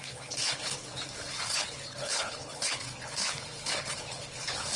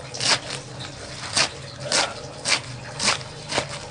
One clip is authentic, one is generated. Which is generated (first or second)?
first